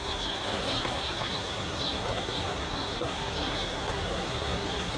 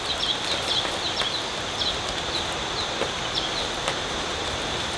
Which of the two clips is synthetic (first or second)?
first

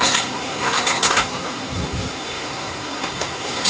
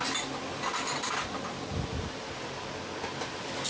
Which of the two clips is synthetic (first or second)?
first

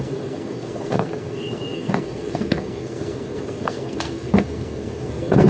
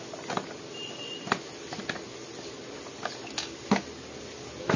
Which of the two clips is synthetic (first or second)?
first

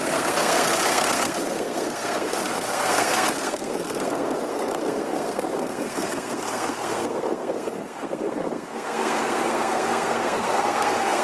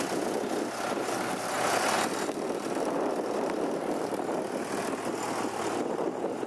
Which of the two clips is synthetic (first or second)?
first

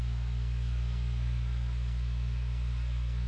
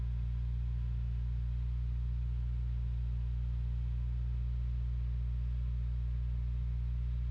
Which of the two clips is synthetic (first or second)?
first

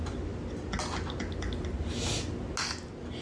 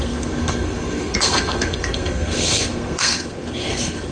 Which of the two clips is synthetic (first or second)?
second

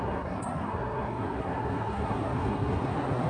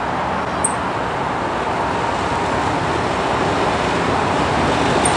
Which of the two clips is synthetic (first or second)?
first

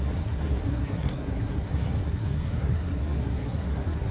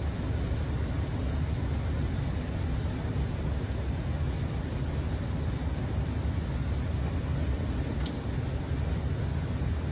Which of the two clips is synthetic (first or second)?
first